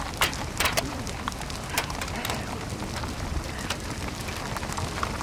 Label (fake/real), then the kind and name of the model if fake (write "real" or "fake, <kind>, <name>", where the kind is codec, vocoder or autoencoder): fake, vocoder, BigVGAN v2